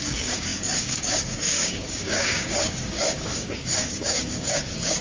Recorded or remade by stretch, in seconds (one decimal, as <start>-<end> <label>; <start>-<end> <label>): 0.0-5.0 remade